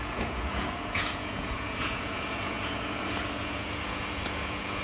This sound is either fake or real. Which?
fake